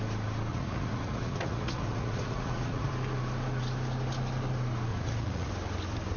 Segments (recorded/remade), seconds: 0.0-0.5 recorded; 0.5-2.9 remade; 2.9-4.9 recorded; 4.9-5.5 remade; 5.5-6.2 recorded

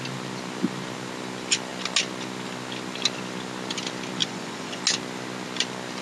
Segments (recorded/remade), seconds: 0.0-4.2 recorded; 4.2-4.8 remade; 4.8-6.0 recorded

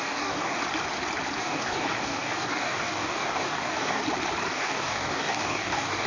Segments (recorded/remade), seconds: 0.0-0.6 remade; 0.6-1.4 recorded; 1.4-4.0 remade; 4.0-4.5 recorded; 4.5-6.1 remade

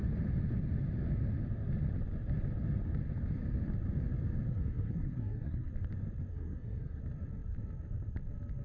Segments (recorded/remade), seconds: 0.0-4.5 recorded; 4.5-5.7 remade; 5.7-6.3 recorded; 6.3-7.0 remade; 7.0-8.6 recorded

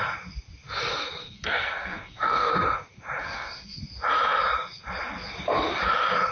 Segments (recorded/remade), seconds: 0.0-1.2 recorded; 1.2-2.5 remade; 2.5-3.2 recorded; 3.2-3.8 remade; 3.8-6.3 recorded

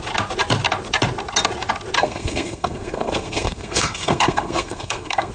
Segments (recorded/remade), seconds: 0.0-2.0 recorded; 2.0-5.3 remade

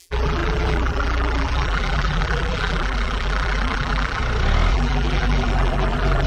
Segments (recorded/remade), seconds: 0.0-4.2 remade; 4.2-4.7 recorded; 4.7-6.3 remade

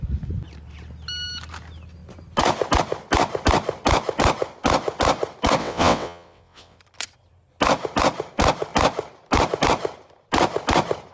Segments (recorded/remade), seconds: 0.0-5.6 recorded; 5.6-6.8 remade; 6.8-11.1 recorded